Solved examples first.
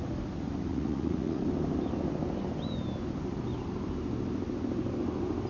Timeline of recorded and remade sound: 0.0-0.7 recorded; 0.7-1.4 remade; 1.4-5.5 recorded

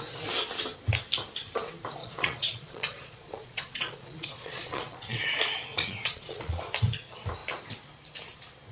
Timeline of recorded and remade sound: 0.0-2.0 recorded; 2.0-5.2 remade; 5.2-5.7 recorded; 5.7-6.7 remade; 6.7-8.7 recorded

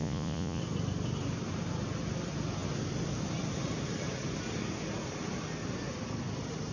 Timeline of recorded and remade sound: 0.0-0.6 remade; 0.6-6.7 recorded

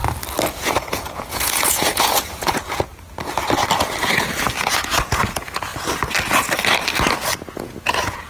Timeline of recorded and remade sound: 0.0-0.5 recorded; 0.5-2.9 remade; 2.9-4.6 recorded; 4.6-5.7 remade; 5.7-7.5 recorded; 7.5-8.3 remade